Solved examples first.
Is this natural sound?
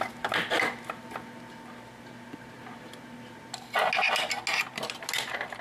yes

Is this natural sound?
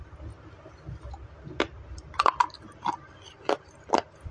yes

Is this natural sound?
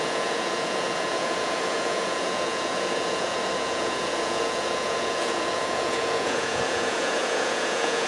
no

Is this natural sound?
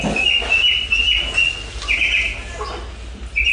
yes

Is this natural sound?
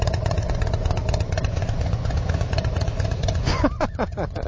no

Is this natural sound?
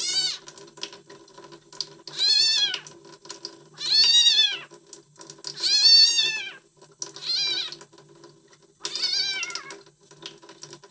yes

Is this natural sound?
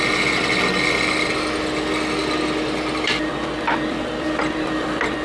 yes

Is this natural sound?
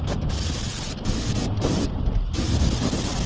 yes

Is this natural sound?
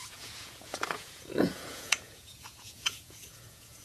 no